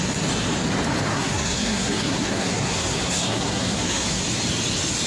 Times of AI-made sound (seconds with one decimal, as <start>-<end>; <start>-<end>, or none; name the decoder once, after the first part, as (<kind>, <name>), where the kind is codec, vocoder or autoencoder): 1.1-4.2 (codec, SNAC)